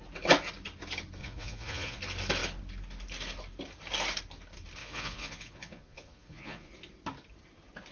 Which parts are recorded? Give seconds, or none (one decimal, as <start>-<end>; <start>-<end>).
0.0-1.2; 2.0-4.8; 6.7-7.9

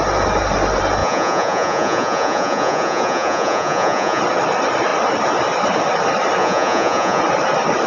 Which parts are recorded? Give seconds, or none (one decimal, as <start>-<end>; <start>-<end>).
0.0-1.0; 4.2-6.4; 7.2-7.9

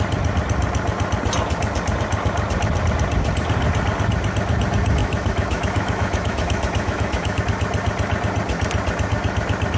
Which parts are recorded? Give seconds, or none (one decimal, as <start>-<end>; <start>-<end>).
0.0-5.0; 7.4-9.8

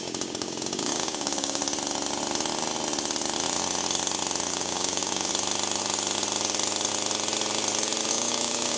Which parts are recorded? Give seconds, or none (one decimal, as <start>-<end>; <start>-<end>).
1.6-4.5; 5.3-8.1

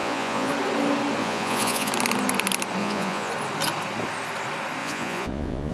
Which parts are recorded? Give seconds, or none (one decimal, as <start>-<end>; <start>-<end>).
0.5-1.2; 1.9-2.8; 3.3-4.8